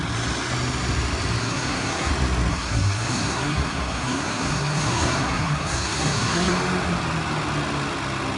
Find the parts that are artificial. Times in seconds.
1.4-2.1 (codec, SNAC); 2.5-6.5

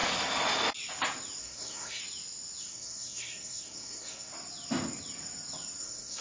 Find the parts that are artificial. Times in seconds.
1.4-2.0 (codec, SNAC); 2.6-4.3; 5.8-6.2

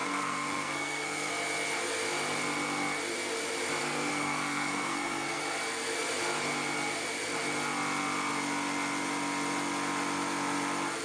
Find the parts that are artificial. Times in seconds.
0.0-1.3 (codec, SNAC); 3.8-5.4

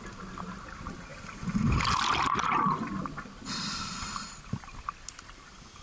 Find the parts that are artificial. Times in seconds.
none

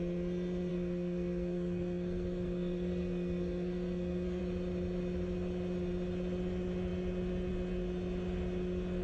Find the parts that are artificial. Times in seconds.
0.7-4.4 (codec, SNAC)